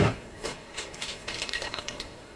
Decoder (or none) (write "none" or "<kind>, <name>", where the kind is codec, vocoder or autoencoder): codec, SNAC